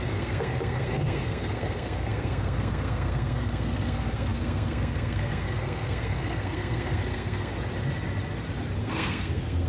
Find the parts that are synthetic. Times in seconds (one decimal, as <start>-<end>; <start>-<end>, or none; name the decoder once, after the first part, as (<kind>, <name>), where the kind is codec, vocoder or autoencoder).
0.0-7.5 (codec, SNAC); 8.8-9.7